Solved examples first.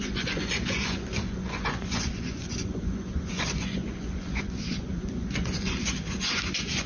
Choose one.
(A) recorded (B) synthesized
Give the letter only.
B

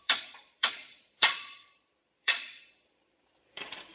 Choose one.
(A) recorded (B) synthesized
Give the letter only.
B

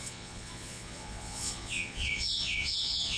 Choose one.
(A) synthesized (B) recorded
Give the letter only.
A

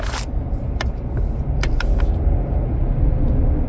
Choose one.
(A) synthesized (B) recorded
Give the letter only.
B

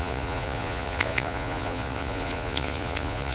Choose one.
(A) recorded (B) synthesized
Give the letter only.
B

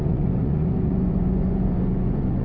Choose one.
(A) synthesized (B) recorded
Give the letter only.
A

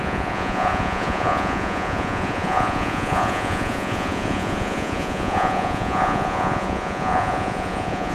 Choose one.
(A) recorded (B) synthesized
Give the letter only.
B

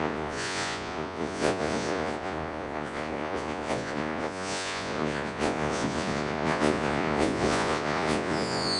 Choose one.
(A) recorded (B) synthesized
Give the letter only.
B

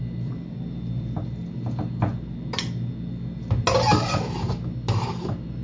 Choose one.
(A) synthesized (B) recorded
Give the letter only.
B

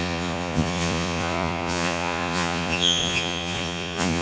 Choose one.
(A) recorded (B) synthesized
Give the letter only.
B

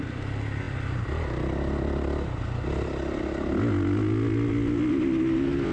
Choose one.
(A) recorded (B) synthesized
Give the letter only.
A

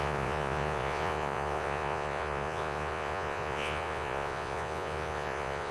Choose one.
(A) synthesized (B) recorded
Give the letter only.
A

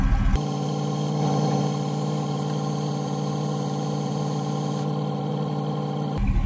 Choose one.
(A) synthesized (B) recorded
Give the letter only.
B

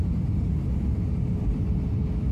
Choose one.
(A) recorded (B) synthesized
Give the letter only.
A